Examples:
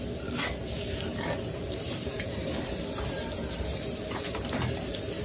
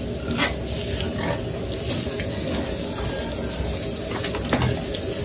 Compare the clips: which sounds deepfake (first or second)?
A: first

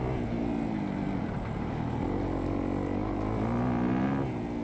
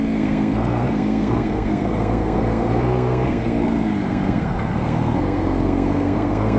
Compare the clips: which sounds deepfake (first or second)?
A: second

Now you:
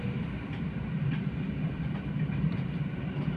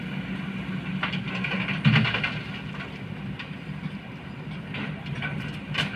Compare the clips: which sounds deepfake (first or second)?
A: first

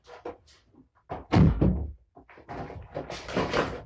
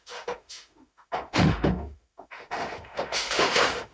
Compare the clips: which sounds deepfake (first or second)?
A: second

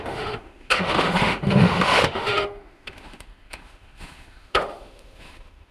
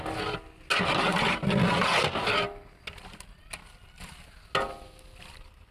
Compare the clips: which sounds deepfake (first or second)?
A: first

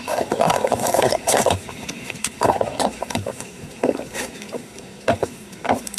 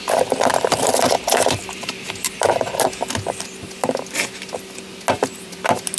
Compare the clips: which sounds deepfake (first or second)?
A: first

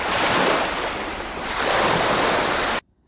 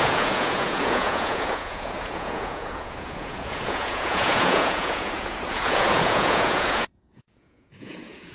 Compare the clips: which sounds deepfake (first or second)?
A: second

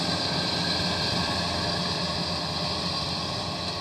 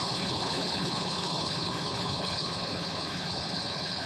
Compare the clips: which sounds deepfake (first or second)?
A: second